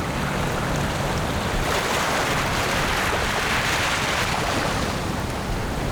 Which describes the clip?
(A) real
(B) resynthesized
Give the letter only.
A